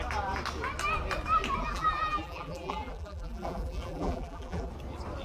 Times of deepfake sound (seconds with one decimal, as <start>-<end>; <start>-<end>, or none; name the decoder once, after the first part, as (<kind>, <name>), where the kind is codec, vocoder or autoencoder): 1.6-4.7 (vocoder, BigVGAN v2)